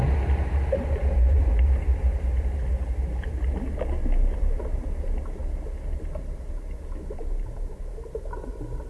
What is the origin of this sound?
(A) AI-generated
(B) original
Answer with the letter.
B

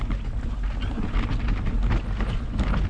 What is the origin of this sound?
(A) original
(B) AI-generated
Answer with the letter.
A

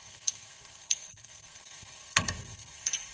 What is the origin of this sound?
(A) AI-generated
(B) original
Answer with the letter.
A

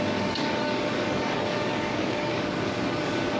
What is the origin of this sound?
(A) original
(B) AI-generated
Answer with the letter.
B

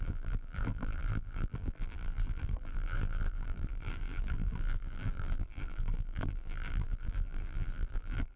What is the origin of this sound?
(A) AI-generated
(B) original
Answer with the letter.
A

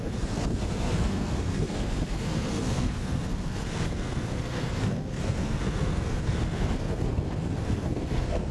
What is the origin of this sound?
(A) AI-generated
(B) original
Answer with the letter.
A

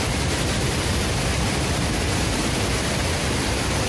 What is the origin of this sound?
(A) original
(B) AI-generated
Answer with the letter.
B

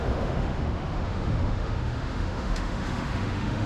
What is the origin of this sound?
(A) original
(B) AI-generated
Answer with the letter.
B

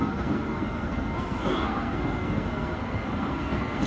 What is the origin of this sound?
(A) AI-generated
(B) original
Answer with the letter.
A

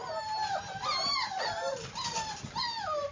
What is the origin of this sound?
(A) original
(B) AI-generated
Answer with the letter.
A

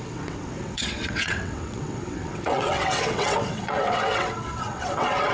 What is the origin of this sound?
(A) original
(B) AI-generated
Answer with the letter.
B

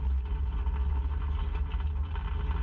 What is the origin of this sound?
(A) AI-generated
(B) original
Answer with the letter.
B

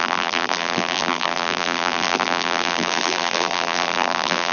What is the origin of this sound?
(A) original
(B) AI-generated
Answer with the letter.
B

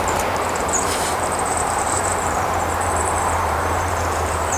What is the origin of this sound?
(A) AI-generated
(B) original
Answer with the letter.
A